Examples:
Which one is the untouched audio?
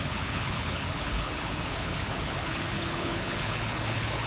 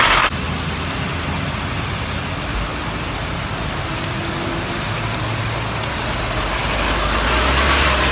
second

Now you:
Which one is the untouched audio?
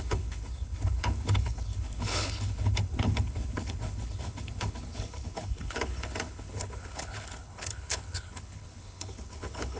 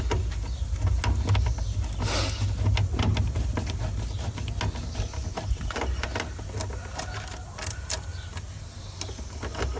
second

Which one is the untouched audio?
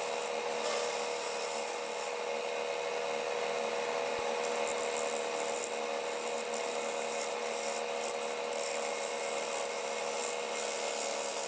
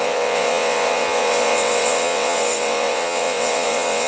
first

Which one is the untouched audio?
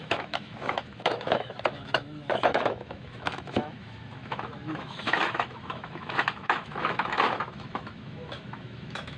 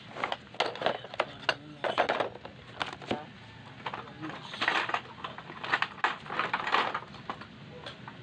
second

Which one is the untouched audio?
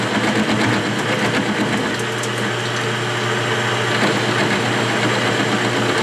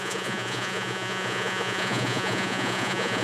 first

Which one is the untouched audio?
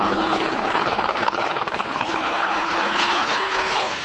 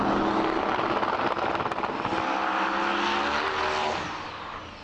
second